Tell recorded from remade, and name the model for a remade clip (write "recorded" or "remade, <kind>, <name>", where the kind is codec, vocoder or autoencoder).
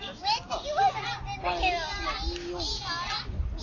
recorded